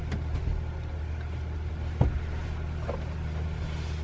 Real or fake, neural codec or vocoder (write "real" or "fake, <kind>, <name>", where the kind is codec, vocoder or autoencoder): real